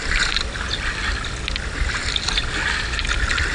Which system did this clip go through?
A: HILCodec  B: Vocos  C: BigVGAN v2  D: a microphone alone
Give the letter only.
D